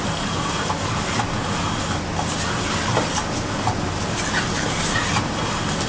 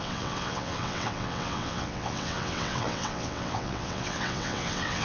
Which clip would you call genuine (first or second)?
first